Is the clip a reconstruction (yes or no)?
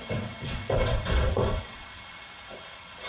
yes